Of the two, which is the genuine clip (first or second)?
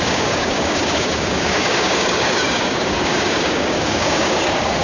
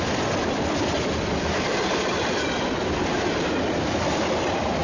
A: second